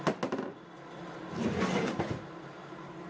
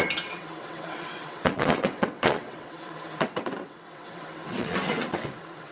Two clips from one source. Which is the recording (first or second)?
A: first